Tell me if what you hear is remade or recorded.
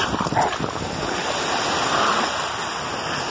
recorded